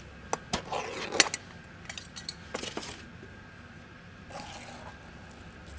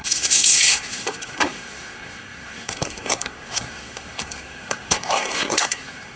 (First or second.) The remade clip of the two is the second